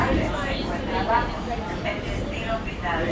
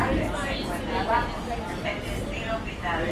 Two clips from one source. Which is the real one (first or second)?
second